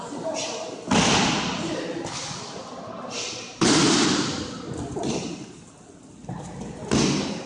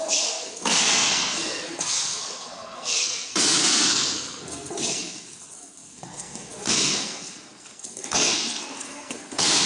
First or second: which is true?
first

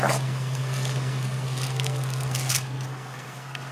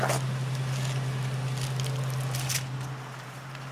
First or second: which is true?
second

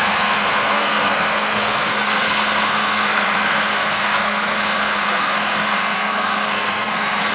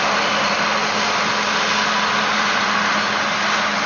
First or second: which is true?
second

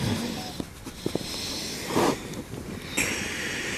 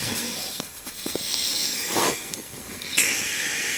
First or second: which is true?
first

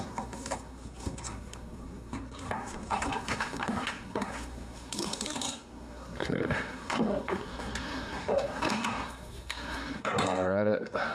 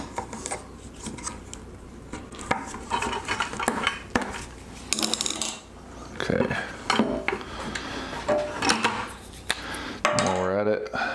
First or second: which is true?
second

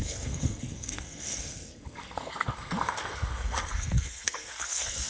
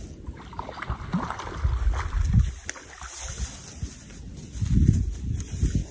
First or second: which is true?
second